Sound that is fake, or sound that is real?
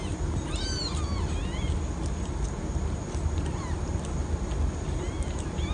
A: real